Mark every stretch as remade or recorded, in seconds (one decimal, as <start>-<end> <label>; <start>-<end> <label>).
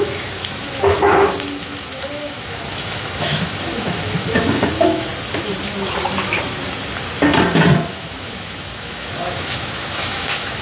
0.0-5.1 remade; 5.1-7.9 recorded; 7.9-10.6 remade